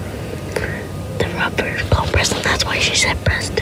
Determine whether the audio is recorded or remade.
remade